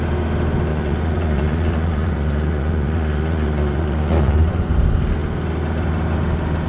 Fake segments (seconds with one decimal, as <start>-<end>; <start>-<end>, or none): 0.7-4.7

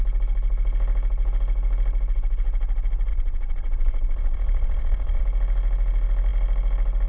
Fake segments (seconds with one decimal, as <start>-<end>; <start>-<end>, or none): 3.1-5.2